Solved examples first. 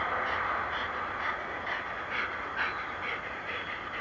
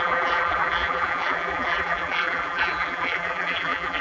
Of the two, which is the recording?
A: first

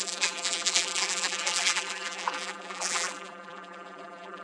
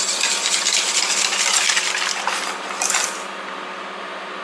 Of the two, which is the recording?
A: second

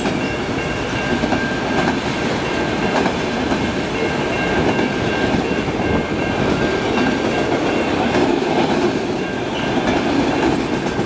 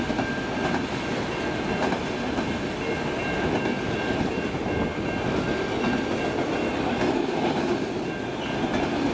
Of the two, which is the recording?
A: second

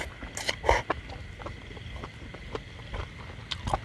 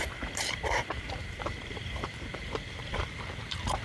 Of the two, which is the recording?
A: first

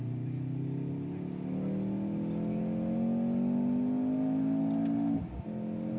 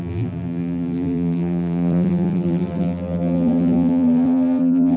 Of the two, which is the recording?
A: first